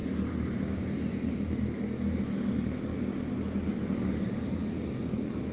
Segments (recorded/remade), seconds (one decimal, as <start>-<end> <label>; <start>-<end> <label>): 0.0-5.5 recorded